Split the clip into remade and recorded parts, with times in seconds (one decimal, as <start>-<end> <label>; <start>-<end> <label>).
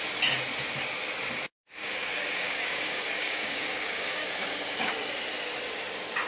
0.0-1.8 recorded; 1.8-4.9 remade; 4.9-6.3 recorded